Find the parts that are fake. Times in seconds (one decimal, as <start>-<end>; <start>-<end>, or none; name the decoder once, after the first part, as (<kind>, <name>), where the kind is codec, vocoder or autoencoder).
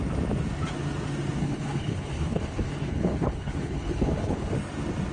1.4-4.5 (codec, HILCodec)